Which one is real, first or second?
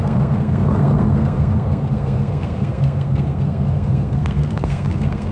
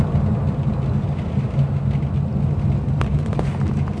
second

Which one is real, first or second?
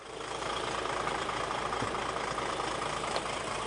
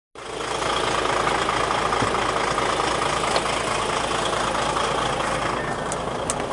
second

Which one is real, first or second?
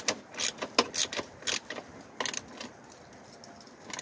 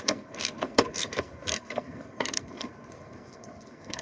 first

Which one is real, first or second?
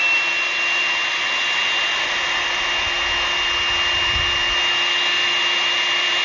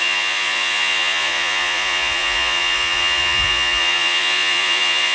first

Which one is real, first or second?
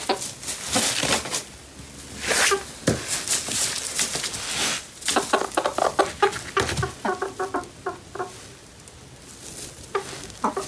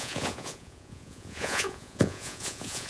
first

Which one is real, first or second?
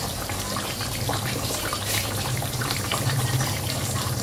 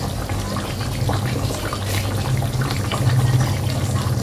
second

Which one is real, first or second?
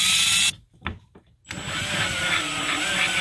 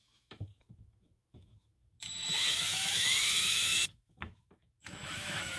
first